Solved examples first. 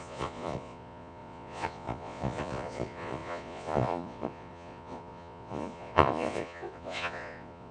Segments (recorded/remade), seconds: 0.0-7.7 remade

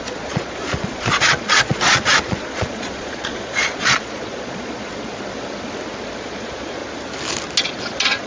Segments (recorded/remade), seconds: 0.0-4.9 remade; 4.9-6.2 recorded; 6.2-6.8 remade; 6.8-7.7 recorded; 7.7-8.3 remade

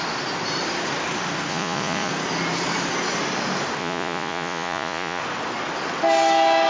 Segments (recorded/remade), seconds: 0.0-1.5 recorded; 1.5-2.1 remade; 2.1-3.8 recorded; 3.8-5.2 remade; 5.2-6.7 recorded

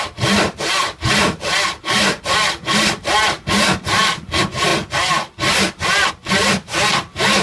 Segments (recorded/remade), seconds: 0.0-7.4 recorded

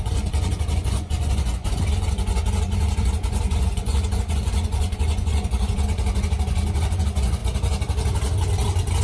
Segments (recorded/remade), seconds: 0.0-7.4 remade; 7.4-9.0 recorded

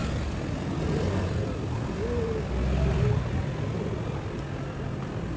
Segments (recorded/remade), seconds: 0.0-5.4 recorded

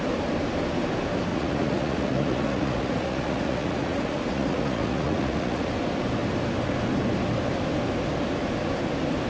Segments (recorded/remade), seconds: 0.0-1.3 recorded; 1.3-5.7 remade; 5.7-9.3 recorded